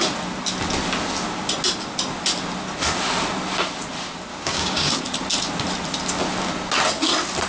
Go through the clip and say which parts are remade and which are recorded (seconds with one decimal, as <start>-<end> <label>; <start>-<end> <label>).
0.0-4.3 recorded; 4.3-4.9 remade; 4.9-7.5 recorded